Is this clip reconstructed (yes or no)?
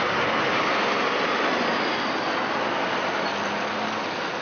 no